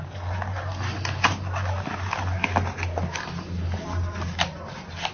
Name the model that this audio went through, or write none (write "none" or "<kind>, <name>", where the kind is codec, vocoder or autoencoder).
none